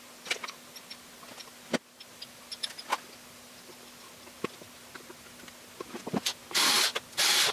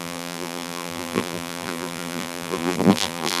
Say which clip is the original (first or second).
first